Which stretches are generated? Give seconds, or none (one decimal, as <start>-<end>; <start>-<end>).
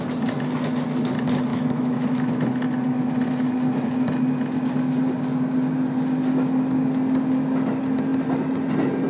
1.5-2.3